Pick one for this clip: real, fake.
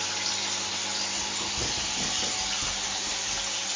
real